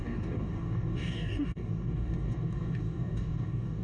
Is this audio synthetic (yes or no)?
yes